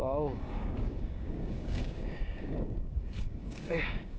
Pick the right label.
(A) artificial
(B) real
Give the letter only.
A